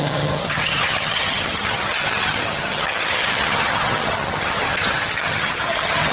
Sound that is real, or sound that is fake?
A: fake